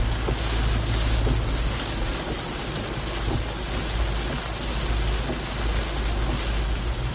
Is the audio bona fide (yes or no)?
yes